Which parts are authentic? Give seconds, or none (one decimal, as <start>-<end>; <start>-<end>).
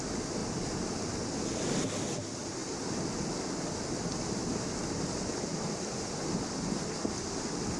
0.0-7.8